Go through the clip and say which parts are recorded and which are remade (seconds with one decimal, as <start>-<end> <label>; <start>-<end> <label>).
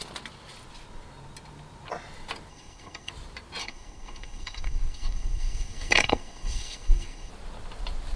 0.0-2.5 recorded; 2.5-3.1 remade; 3.1-3.6 recorded; 3.6-7.3 remade; 7.3-8.2 recorded